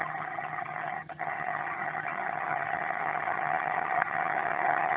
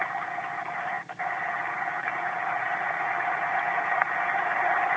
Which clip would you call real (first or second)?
second